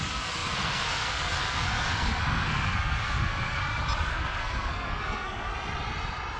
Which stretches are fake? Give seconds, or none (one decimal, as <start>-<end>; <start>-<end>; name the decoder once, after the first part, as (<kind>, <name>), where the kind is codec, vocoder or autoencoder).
0.0-3.6 (codec, SNAC); 4.1-5.5